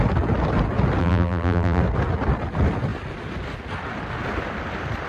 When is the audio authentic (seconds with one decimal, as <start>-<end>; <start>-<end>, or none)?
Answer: 0.0-1.0; 1.8-5.1